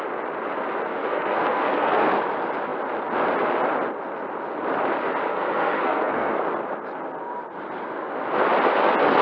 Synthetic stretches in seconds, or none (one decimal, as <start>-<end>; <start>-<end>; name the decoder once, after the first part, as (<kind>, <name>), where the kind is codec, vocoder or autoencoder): 1.0-2.2 (codec, SNAC); 5.3-6.4